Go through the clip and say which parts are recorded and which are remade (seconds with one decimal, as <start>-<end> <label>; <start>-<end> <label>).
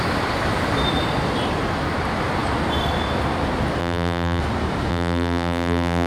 0.0-3.8 recorded; 3.8-4.4 remade; 4.4-4.9 recorded; 4.9-6.1 remade